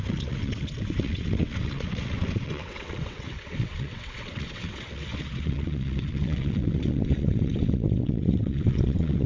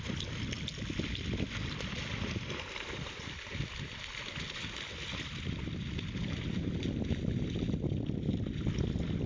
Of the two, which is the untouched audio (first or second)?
second